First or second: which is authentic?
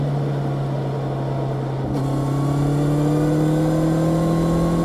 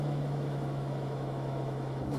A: first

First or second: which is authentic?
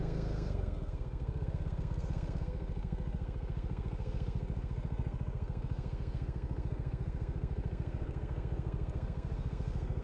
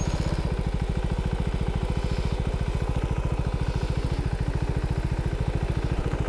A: second